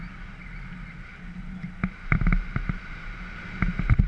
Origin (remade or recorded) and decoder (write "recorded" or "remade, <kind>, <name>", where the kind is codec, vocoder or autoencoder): recorded